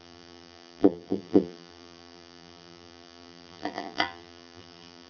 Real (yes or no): no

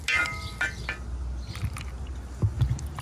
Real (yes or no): yes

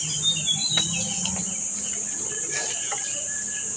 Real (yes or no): no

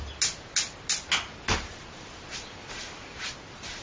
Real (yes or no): yes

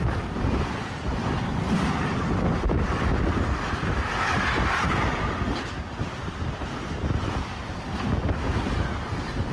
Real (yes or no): yes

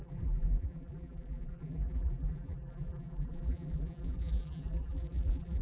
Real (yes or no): no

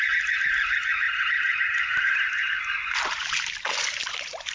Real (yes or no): no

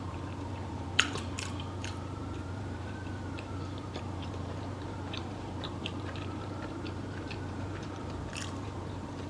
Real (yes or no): no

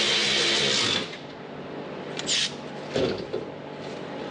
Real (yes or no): yes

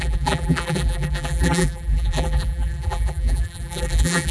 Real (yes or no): no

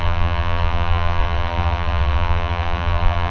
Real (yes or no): no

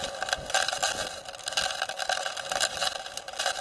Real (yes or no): yes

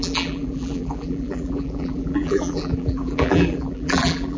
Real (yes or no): no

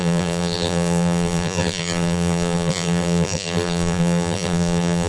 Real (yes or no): no